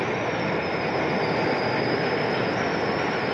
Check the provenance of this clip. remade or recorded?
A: recorded